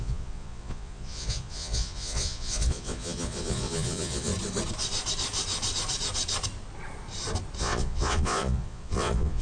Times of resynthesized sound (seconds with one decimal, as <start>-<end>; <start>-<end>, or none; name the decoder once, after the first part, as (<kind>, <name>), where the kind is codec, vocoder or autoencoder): 0.0-4.3 (vocoder, Vocos); 7.6-9.4